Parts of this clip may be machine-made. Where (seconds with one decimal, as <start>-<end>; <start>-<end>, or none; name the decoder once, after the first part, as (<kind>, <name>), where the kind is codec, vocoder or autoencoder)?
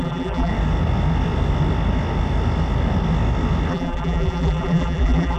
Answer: 0.0-0.5 (vocoder, BigVGAN v2); 3.7-5.4